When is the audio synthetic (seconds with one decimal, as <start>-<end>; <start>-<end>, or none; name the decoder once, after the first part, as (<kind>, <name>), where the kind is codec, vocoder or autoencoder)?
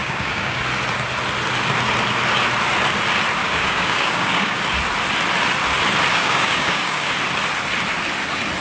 0.0-0.6 (codec, DAC); 3.4-4.6; 6.1-7.1